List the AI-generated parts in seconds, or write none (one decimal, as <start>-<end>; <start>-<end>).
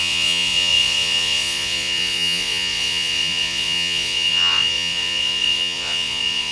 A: 0.0-6.5